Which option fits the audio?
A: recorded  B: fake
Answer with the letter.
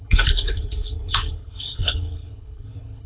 B